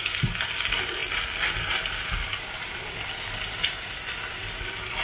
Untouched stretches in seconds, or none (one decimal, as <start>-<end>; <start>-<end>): 0.0-5.0